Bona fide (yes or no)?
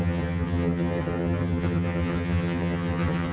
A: no